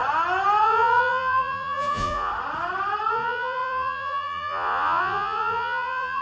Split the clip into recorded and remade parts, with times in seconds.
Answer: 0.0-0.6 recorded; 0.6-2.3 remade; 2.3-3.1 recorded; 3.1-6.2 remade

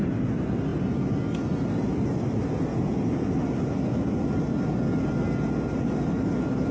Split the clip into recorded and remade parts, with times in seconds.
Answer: 0.0-0.7 remade; 0.7-1.4 recorded; 1.4-2.7 remade; 2.7-6.7 recorded